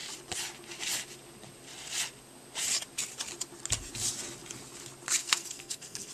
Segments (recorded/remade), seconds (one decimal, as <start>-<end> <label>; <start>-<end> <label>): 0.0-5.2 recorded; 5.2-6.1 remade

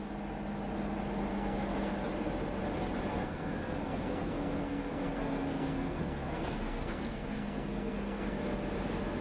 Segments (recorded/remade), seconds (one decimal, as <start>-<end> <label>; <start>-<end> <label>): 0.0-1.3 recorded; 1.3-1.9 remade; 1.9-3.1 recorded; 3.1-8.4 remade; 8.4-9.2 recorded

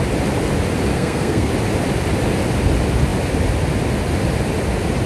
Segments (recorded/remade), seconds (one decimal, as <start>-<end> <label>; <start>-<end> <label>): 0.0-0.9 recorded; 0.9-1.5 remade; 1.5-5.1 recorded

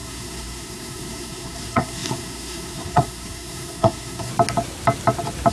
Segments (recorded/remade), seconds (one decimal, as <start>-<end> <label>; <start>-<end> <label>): 0.0-4.3 remade; 4.3-5.5 recorded

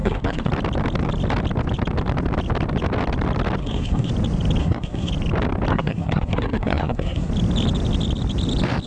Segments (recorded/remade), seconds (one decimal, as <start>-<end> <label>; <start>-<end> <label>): 0.0-0.5 remade; 0.5-3.6 recorded; 3.6-4.1 remade; 4.1-4.6 recorded; 4.6-5.1 remade; 5.1-5.7 recorded; 5.7-7.3 remade; 7.3-8.9 recorded